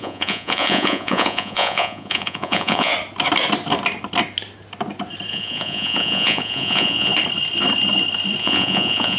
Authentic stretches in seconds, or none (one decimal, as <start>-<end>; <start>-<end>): 2.9-5.3; 7.1-8.4